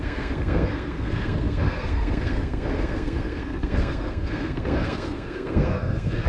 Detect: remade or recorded remade